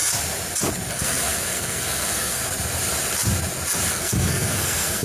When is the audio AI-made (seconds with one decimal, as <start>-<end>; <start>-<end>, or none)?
0.9-2.4; 3.9-5.0